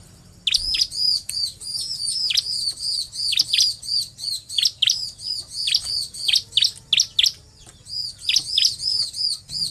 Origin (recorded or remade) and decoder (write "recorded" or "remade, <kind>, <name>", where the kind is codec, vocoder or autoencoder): recorded